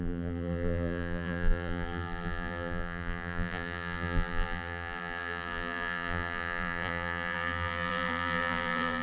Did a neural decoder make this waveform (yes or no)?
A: yes